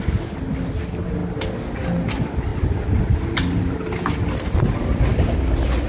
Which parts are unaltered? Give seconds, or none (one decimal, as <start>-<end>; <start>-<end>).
0.0-5.9